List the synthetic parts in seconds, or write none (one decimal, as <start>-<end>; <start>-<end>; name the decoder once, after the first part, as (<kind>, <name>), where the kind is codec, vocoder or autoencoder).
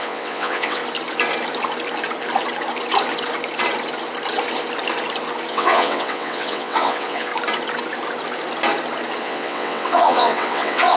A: 0.0-0.8 (vocoder, WaveNeXt); 5.5-7.3; 9.2-11.0